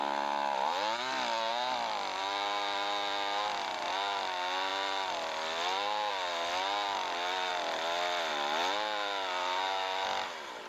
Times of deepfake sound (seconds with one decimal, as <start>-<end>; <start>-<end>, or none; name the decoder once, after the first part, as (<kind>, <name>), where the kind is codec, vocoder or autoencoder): none